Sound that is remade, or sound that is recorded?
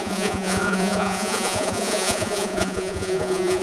remade